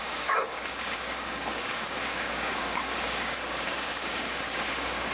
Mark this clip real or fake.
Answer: fake